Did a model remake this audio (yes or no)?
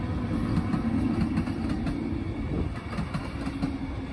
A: no